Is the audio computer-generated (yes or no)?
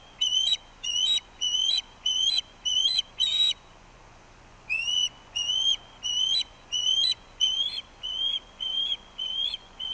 yes